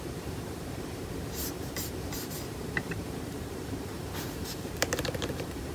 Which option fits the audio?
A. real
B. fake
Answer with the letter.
B